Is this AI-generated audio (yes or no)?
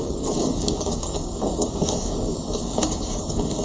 yes